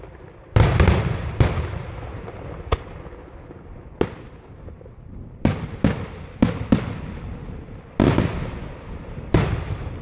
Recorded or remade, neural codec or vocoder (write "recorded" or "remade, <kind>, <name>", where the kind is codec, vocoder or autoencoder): recorded